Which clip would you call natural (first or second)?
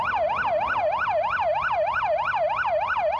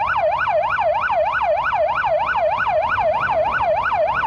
first